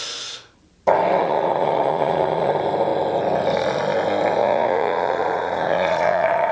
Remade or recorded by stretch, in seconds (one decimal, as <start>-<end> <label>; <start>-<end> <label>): 0.0-1.2 recorded; 1.2-2.5 remade; 2.5-4.4 recorded; 4.4-6.5 remade